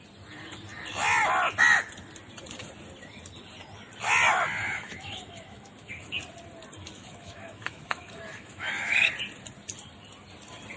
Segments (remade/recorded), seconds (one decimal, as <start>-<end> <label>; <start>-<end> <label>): 0.0-4.6 recorded; 4.6-6.2 remade; 6.2-6.8 recorded; 6.8-9.1 remade; 9.1-10.8 recorded